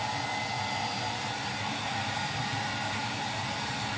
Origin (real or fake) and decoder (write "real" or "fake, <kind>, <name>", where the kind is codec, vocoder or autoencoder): real